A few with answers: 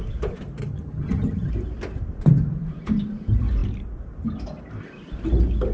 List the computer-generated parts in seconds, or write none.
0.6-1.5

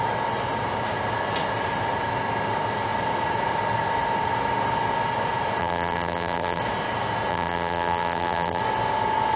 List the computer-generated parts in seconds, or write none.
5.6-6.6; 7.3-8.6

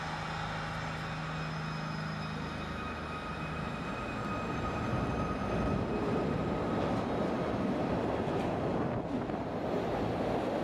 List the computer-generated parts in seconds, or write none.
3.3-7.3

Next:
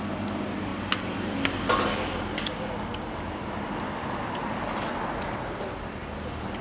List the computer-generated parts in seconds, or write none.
none

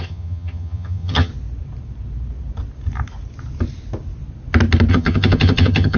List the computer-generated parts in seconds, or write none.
0.0-1.3; 4.9-6.0

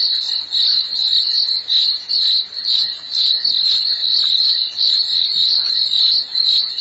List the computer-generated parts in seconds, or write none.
4.0-5.7